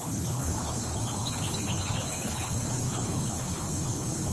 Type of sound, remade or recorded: remade